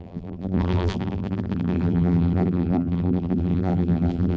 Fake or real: fake